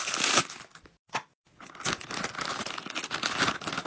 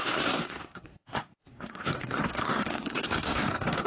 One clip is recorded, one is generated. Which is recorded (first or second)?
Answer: first